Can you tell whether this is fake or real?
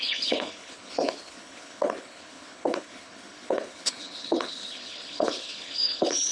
fake